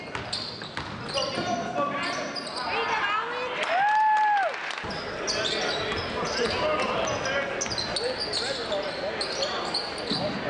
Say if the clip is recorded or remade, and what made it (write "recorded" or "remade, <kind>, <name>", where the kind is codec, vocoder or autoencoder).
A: recorded